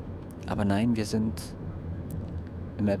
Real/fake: fake